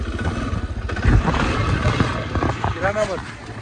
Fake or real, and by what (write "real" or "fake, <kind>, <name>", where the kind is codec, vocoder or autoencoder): real